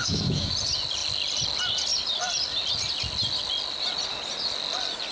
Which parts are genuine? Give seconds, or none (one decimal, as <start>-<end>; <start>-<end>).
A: 0.5-5.1